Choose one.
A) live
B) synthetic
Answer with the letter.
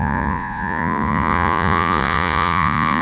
B